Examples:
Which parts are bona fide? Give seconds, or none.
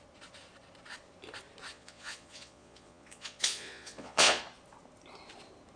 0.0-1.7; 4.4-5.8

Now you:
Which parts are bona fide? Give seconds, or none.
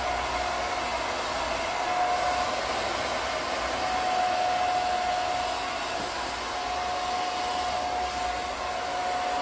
0.0-9.4